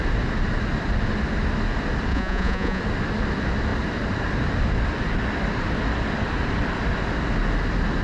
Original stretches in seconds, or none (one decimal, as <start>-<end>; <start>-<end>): 0.0-2.1; 2.8-8.0